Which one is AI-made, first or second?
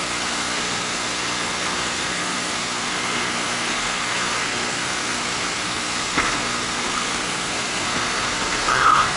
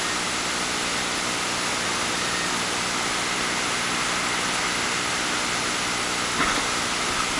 first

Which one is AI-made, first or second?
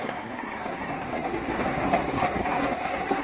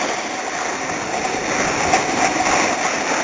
first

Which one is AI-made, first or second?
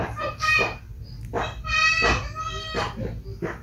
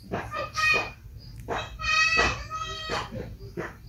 second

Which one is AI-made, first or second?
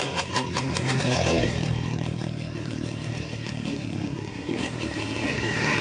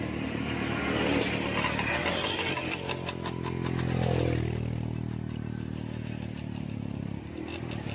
first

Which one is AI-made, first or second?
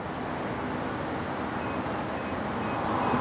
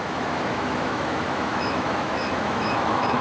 second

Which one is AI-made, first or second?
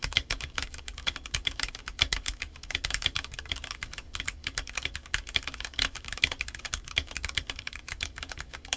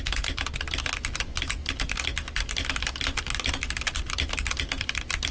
first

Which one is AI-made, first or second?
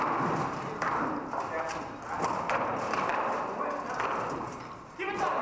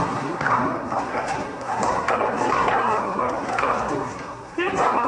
second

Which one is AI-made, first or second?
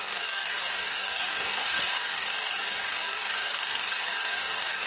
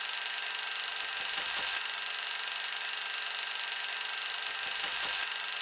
first